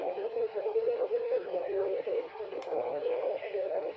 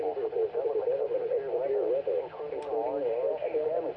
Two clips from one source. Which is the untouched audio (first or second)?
second